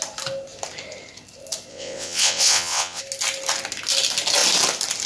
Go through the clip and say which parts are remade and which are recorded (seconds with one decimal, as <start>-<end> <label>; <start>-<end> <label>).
0.0-1.7 recorded; 1.7-3.0 remade; 3.0-5.1 recorded